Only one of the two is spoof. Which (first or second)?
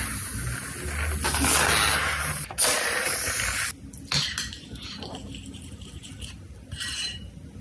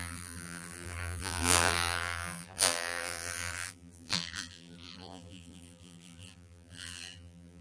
second